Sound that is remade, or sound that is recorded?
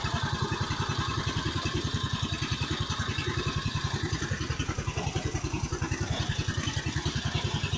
remade